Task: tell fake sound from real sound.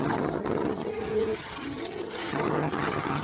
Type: fake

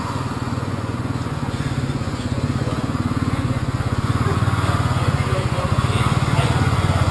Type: fake